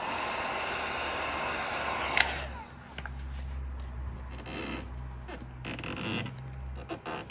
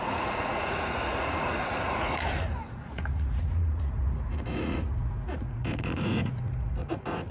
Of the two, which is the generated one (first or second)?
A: second